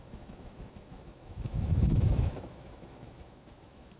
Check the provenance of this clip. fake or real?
fake